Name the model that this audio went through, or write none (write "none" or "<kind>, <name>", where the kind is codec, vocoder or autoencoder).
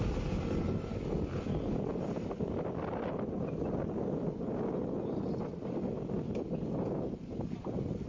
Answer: none